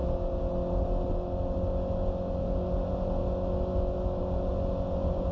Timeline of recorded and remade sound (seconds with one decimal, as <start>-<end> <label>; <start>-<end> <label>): 0.0-3.7 recorded; 3.7-4.2 remade; 4.2-5.3 recorded